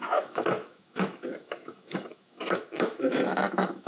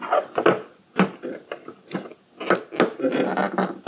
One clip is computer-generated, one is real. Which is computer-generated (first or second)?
first